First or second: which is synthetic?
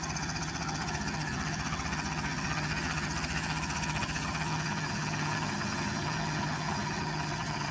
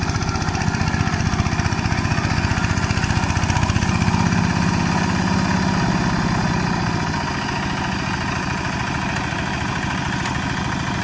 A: first